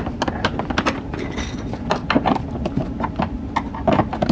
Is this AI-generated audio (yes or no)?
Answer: no